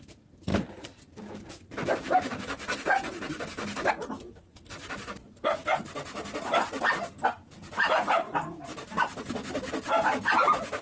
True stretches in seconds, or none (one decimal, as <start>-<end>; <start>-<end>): 0.0-0.5; 3.9-8.7; 9.2-10.8